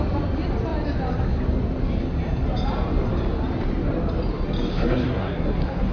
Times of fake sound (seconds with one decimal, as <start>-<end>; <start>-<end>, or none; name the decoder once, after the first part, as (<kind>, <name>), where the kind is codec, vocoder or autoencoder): 4.7-5.9 (codec, SNAC)